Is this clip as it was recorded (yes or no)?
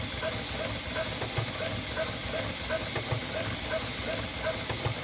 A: yes